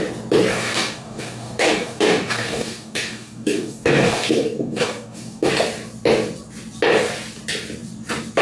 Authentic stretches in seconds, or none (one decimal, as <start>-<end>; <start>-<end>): 0.0-0.5; 5.5-8.4